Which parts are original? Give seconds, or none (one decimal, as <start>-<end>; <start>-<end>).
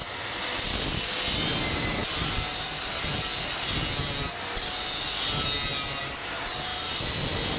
0.0-6.7